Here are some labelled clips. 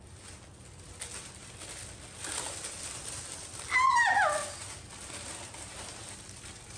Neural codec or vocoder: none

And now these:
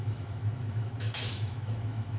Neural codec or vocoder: autoencoder, DAC-VAE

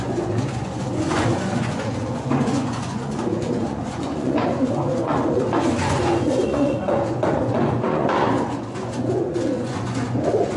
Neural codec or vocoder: vocoder, Vocos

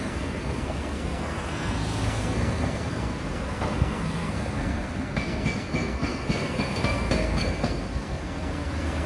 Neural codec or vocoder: codec, SNAC